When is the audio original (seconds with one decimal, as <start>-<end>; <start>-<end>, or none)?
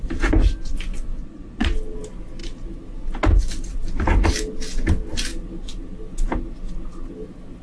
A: 0.0-1.2; 1.7-7.6